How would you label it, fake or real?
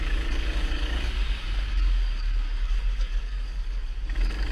fake